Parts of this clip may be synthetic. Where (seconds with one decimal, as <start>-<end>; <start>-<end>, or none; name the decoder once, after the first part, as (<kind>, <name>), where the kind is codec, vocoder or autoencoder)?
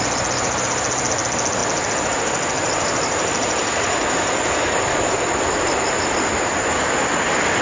none